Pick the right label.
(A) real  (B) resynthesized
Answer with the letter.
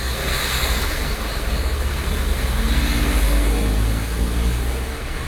B